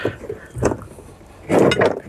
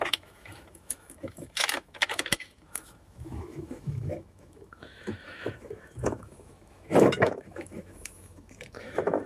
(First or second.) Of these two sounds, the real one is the first